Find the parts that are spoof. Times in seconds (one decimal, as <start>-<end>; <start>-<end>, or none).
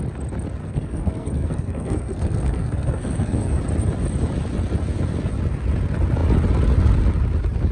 0.6-3.6